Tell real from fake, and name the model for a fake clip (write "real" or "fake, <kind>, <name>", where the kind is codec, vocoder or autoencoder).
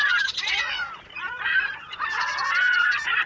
fake, vocoder, Vocos